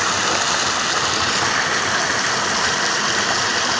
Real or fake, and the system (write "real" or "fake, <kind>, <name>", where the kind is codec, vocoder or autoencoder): real